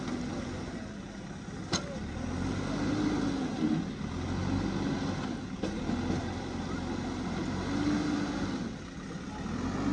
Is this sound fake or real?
real